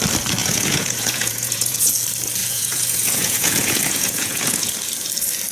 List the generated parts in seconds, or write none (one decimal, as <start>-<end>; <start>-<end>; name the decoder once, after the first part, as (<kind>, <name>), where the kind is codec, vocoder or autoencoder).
0.4-1.9 (vocoder, Vocos); 2.4-4.7

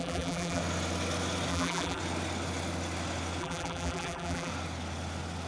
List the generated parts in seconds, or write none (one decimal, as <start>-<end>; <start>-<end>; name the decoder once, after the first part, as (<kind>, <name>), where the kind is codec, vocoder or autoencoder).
0.0-0.6 (vocoder, BigVGAN v2); 1.5-2.0; 3.4-4.5

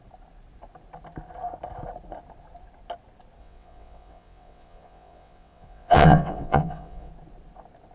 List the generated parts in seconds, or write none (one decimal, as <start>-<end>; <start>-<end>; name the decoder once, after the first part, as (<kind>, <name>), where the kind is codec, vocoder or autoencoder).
3.4-7.1 (vocoder, WaveNeXt)

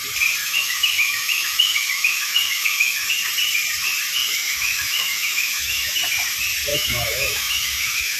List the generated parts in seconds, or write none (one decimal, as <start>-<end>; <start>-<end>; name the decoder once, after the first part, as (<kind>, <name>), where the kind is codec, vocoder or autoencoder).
0.4-3.1 (autoencoder, DAC-VAE); 4.2-5.9; 6.7-8.2

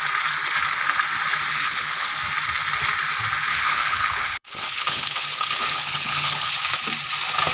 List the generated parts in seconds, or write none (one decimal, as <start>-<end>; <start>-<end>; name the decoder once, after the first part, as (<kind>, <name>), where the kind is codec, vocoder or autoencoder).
1.5-2.1 (codec, HILCodec); 3.5-6.5

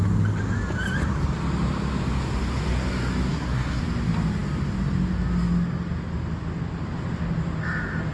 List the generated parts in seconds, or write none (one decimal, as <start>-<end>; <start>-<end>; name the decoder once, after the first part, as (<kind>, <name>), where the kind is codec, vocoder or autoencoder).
3.3-3.8 (codec, SNAC)

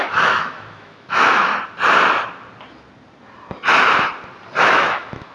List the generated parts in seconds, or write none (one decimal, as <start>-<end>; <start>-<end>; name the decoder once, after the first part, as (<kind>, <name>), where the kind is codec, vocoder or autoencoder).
0.0-1.5 (autoencoder, DAC-VAE); 4.6-5.3

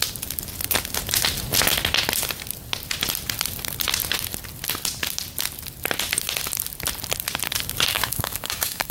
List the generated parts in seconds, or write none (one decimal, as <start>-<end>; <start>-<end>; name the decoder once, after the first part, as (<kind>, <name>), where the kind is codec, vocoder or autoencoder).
7.9-8.9 (codec, DAC)